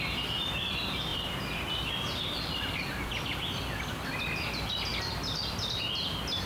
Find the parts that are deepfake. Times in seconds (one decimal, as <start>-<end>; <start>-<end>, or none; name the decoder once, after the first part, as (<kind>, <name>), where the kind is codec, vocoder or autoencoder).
0.0-1.1 (vocoder, BigVGAN v2); 3.8-4.9; 5.8-6.5